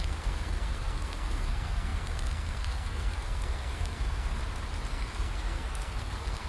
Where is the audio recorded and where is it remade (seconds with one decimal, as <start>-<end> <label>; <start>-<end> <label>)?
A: 0.0-4.4 remade; 4.4-4.9 recorded; 4.9-6.5 remade